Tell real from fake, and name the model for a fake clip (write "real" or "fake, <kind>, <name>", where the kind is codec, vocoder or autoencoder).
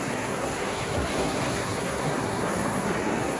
fake, codec, SNAC